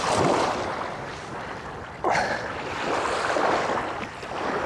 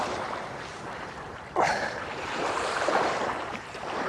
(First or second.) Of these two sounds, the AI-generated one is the second